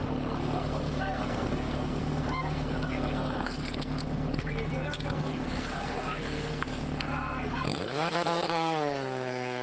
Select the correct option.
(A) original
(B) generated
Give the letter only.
B